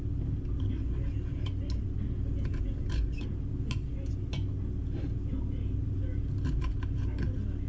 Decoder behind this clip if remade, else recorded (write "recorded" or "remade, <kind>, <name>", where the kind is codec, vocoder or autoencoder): recorded